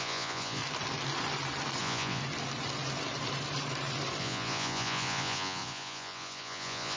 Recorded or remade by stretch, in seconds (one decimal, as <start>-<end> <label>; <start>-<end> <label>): 0.0-0.6 remade; 0.6-1.8 recorded; 1.8-2.2 remade; 2.2-4.2 recorded; 4.2-7.0 remade